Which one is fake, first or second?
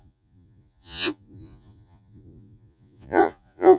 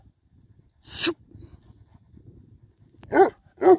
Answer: first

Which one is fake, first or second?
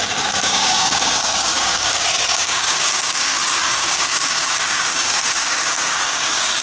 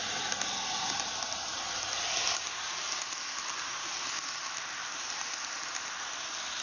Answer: first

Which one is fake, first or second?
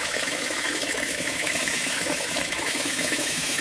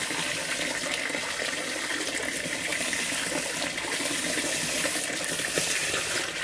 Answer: first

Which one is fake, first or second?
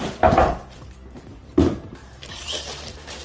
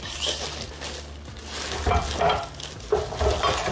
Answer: first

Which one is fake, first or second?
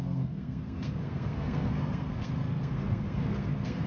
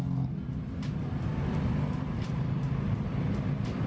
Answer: first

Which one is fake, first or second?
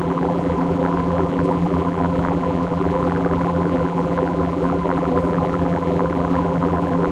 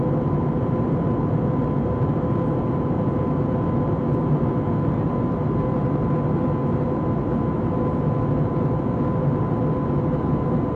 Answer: first